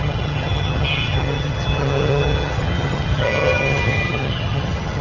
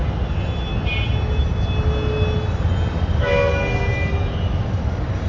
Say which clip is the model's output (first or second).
first